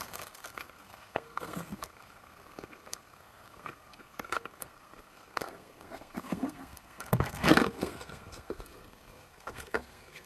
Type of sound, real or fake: fake